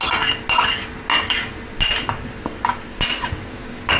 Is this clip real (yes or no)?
yes